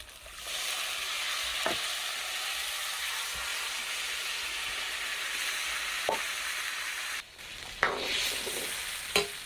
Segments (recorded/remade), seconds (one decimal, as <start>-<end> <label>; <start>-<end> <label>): 0.0-9.5 recorded